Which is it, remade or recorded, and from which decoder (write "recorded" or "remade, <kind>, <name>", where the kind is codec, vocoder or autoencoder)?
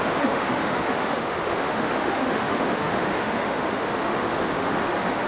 remade, autoencoder, DAC-VAE